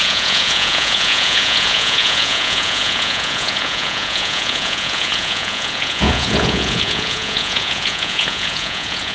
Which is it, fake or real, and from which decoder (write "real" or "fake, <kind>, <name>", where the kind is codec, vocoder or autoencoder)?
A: fake, vocoder, Vocos